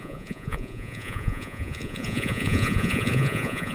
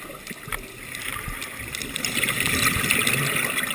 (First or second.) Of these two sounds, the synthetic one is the first